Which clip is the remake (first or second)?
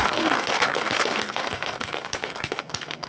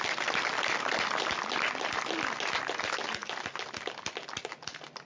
first